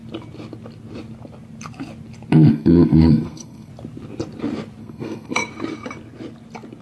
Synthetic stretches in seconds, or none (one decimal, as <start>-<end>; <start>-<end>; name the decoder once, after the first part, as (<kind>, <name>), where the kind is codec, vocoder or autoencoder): 2.5-3.7 (codec, SNAC); 4.8-5.4